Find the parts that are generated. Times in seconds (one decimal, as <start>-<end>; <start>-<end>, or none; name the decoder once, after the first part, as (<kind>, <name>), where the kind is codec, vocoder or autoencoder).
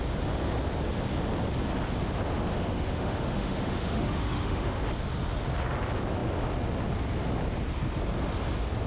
2.5-4.8 (autoencoder, DAC-VAE)